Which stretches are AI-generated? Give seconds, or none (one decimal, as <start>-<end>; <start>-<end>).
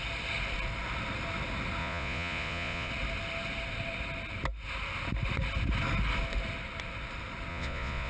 1.8-2.9; 7.5-8.1